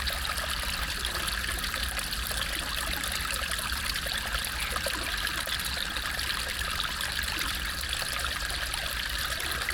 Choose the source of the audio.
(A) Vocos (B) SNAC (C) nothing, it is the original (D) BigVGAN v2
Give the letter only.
C